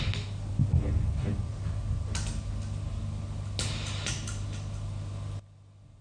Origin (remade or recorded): recorded